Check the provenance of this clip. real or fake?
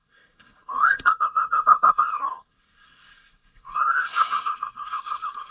fake